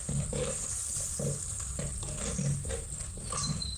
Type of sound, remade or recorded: recorded